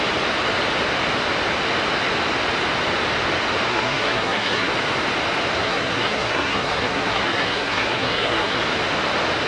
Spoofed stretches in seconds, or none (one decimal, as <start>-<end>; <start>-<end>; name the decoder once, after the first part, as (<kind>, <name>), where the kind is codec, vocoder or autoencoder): 3.7-4.7 (codec, SNAC); 5.6-8.6